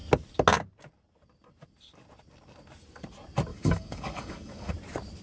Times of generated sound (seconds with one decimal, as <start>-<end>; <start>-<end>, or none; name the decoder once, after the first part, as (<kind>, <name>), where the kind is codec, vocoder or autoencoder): 3.5-4.7 (codec, DAC)